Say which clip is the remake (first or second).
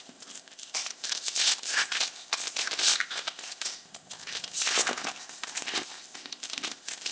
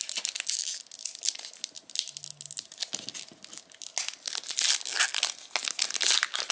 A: first